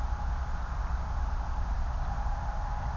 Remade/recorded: recorded